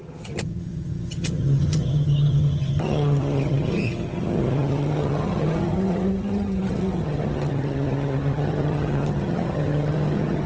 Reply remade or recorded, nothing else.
remade